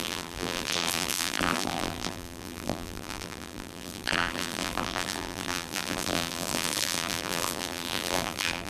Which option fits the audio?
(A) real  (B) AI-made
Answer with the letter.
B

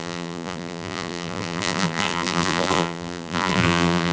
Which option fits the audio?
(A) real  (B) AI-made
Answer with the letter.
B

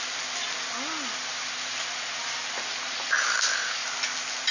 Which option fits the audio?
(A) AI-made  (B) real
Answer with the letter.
B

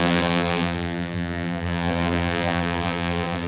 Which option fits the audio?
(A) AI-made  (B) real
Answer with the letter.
A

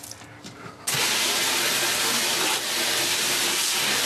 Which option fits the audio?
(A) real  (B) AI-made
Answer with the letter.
A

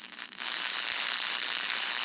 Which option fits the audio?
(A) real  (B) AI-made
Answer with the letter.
B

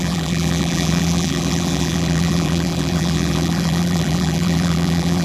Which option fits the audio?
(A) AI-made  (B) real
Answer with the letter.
A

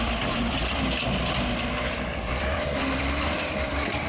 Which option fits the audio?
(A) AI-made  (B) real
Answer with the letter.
A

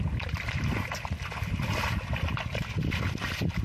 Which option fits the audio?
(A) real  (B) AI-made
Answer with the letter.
A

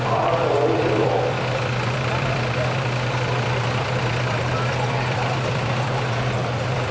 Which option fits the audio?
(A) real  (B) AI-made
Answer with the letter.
B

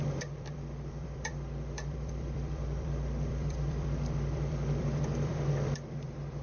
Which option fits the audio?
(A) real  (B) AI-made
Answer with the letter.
B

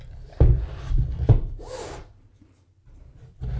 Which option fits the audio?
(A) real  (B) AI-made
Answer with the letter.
B